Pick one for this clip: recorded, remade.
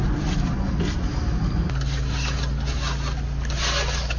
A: recorded